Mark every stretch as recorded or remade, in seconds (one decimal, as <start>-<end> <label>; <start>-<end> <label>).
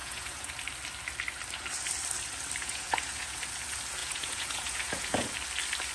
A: 0.0-0.5 remade; 0.5-2.6 recorded; 2.6-3.4 remade; 3.4-4.0 recorded; 4.0-5.3 remade; 5.3-5.9 recorded